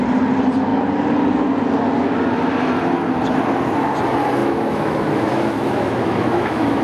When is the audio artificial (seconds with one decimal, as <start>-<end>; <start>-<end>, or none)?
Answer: 4.4-6.8